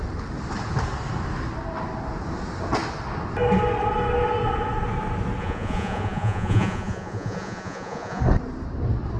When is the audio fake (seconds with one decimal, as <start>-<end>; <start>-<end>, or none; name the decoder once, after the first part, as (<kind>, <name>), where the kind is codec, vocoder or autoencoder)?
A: 5.4-8.2 (vocoder, Vocos)